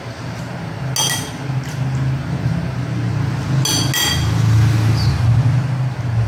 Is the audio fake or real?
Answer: real